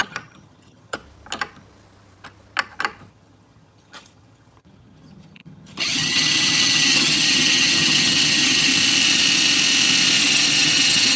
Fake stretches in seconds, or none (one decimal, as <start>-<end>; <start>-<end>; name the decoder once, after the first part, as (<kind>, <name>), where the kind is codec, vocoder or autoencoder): 0.0-1.0 (vocoder, HiFi-GAN); 3.1-8.7; 10.2-11.2